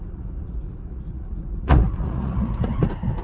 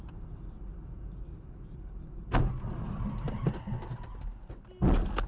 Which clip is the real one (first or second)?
second